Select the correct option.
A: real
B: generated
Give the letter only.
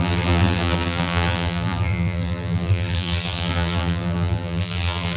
B